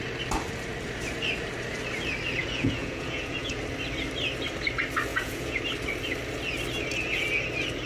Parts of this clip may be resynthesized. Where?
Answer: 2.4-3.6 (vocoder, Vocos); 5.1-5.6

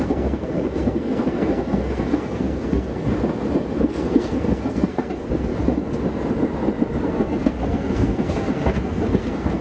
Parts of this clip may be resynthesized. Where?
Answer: 0.0-3.1 (codec, SNAC); 3.8-5.5; 7.0-9.6

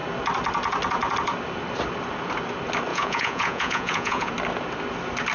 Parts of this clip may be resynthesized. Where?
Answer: 2.9-4.3 (vocoder, Vocos)

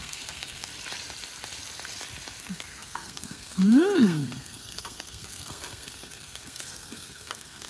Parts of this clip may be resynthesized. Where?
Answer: 0.0-0.7 (codec, SNAC); 2.4-7.7

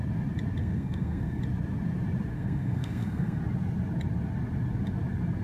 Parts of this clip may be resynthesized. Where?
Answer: 0.6-1.4 (codec, SNAC); 2.3-3.4